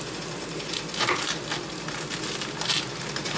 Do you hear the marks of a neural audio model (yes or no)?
no